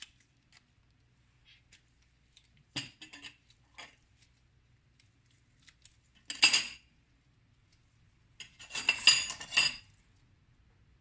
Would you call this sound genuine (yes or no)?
yes